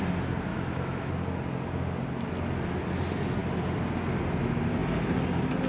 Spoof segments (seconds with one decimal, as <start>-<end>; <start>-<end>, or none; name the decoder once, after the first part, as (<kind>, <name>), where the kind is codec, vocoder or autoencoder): 0.5-1.1 (autoencoder, DAC-VAE)